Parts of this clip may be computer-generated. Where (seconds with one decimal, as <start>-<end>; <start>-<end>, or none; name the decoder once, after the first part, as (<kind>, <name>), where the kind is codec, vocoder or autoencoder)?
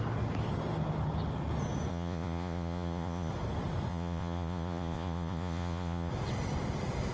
1.9-3.3 (vocoder, Vocos); 3.9-6.1